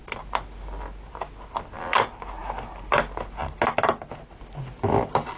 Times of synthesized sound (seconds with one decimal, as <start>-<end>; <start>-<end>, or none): none

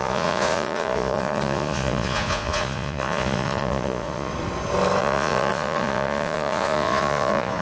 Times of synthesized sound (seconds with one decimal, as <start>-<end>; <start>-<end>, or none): 0.0-4.3; 5.0-7.6

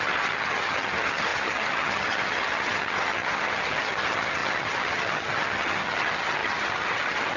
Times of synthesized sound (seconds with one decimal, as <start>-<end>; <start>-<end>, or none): 0.0-7.4

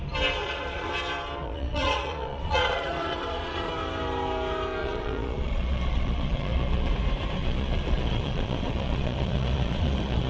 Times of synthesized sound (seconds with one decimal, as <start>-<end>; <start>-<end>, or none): 0.4-0.9; 1.4-3.7; 4.8-6.9; 7.4-10.3

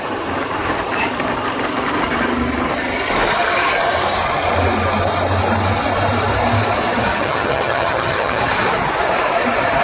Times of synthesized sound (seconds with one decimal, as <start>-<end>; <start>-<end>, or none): 7.1-8.4